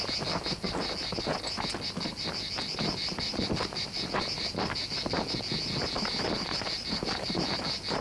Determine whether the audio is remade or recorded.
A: recorded